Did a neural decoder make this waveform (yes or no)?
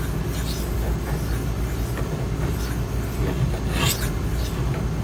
no